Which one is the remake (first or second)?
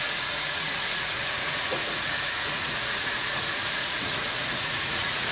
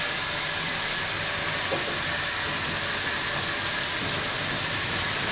first